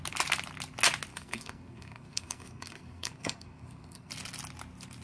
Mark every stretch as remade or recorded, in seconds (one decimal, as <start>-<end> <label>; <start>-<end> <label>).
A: 0.0-1.1 recorded; 1.1-4.1 remade; 4.1-5.0 recorded